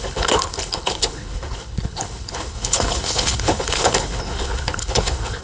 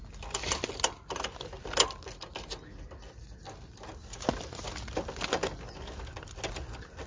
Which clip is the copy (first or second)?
first